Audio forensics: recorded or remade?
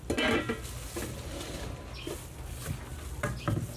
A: recorded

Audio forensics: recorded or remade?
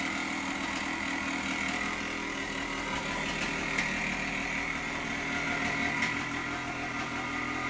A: recorded